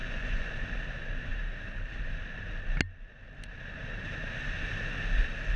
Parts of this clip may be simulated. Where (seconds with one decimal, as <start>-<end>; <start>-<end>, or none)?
0.0-0.5